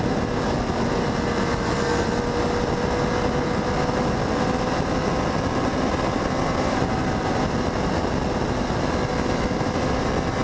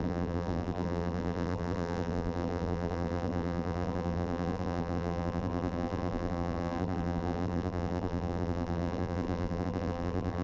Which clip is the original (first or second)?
first